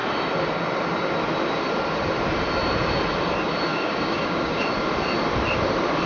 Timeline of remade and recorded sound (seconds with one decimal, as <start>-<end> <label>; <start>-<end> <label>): 0.0-3.7 recorded; 3.7-4.6 remade; 4.6-6.1 recorded